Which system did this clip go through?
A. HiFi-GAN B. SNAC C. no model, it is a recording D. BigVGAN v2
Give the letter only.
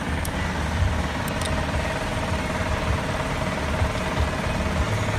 C